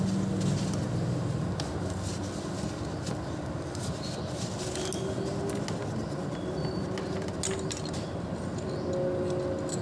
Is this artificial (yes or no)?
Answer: no